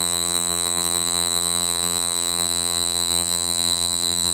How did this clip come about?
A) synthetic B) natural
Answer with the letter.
A